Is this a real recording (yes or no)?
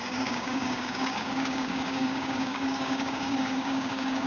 no